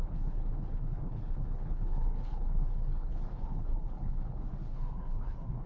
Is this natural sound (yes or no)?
no